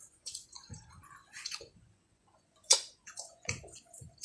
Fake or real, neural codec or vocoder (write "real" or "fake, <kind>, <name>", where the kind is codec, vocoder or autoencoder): fake, vocoder, Vocos